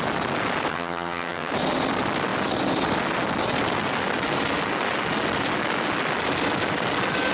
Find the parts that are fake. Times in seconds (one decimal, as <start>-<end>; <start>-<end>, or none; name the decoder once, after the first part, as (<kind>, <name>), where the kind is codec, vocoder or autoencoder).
0.7-1.5 (vocoder, HiFi-GAN)